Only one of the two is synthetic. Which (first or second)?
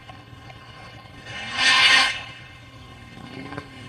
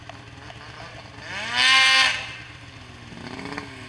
first